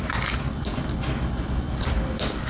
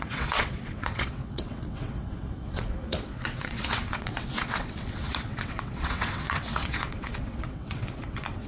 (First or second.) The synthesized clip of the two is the second